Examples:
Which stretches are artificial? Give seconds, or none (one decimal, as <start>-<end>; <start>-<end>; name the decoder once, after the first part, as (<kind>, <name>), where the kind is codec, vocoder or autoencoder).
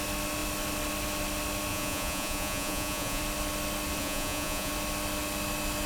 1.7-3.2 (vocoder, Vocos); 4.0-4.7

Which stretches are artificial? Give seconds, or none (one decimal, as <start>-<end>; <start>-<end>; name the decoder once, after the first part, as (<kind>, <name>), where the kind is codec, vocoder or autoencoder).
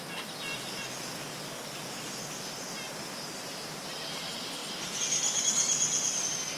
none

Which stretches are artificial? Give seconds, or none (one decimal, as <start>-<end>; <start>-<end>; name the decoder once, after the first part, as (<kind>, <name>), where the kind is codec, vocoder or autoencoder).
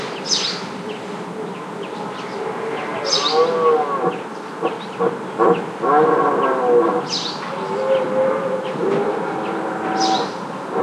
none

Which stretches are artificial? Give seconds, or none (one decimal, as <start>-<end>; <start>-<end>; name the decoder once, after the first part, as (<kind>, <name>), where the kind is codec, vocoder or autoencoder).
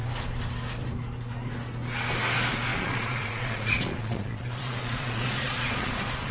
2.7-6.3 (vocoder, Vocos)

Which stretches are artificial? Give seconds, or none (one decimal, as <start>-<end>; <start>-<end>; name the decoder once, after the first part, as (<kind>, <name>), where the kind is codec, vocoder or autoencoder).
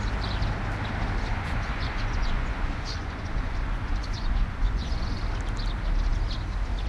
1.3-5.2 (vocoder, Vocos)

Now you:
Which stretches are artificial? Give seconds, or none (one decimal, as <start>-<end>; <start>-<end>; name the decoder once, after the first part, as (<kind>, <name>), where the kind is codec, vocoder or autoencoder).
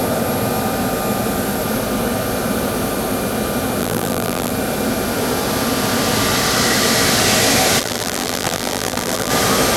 3.8-4.5 (vocoder, BigVGAN v2); 7.8-9.3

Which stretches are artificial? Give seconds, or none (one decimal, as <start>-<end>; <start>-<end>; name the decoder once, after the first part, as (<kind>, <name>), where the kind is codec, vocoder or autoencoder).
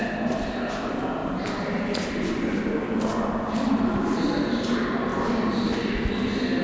1.2-4.5 (vocoder, BigVGAN v2)